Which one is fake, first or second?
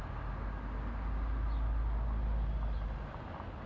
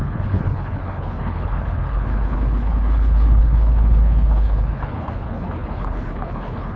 second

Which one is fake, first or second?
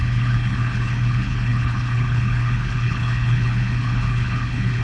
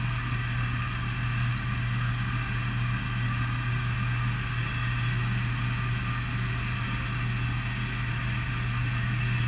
first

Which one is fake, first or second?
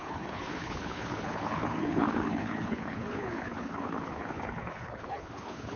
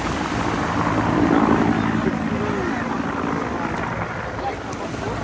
first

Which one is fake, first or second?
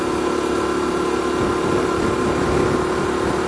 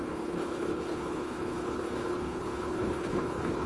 second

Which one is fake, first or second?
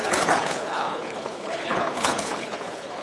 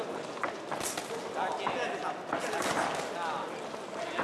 first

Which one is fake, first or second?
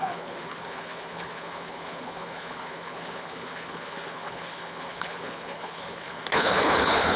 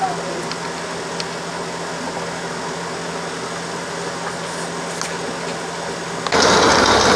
first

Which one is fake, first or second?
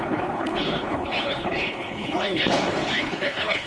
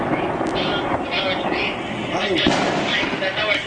first